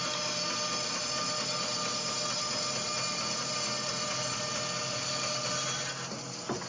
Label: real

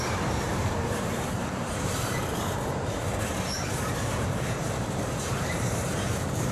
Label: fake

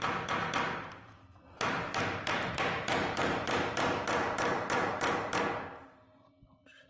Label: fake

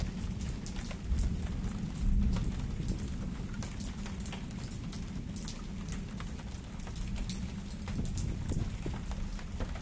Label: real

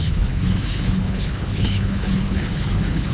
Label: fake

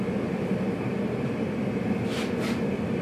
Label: real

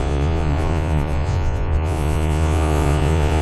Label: fake